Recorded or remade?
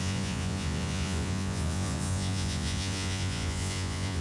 remade